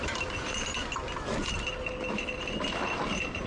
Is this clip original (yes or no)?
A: yes